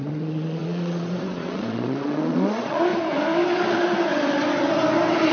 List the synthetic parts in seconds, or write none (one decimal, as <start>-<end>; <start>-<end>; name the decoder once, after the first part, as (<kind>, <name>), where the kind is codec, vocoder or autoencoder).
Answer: 0.0-2.9 (vocoder, Vocos)